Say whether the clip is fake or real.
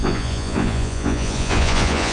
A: fake